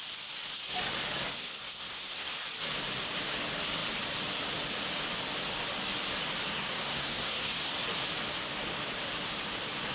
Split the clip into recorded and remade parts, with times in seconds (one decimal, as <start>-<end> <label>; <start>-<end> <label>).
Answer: 0.0-1.4 recorded; 1.4-2.3 remade; 2.3-6.5 recorded; 6.5-7.7 remade; 7.7-9.9 recorded